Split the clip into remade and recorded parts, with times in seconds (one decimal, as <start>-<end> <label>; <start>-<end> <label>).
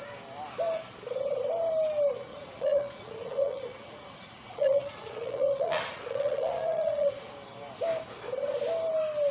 0.0-2.3 recorded; 2.3-7.1 remade; 7.1-9.3 recorded